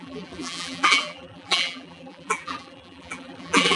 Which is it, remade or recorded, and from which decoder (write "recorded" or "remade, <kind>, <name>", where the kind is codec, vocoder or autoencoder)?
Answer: remade, vocoder, BigVGAN v2